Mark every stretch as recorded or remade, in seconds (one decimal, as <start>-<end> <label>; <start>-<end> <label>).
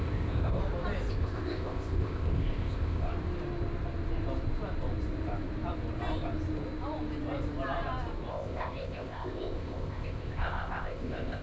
0.0-0.6 remade; 0.6-1.1 recorded; 1.1-3.1 remade; 3.1-8.3 recorded; 8.3-11.4 remade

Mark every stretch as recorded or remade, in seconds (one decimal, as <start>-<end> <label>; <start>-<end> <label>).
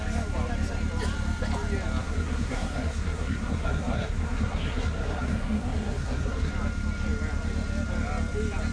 0.0-2.0 recorded; 2.0-6.5 remade; 6.5-8.7 recorded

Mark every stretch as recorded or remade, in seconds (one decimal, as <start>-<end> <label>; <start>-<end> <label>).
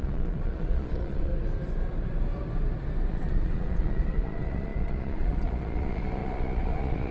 0.0-1.3 remade; 1.3-3.1 recorded; 3.1-7.1 remade